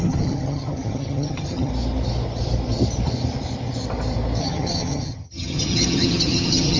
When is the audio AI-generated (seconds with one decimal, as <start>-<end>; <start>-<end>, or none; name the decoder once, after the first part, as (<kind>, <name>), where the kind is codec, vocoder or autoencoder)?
0.0-1.7 (vocoder, HiFi-GAN); 4.4-6.8